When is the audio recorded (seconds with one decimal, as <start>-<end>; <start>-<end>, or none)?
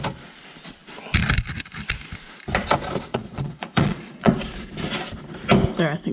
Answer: 0.0-3.1; 4.3-6.1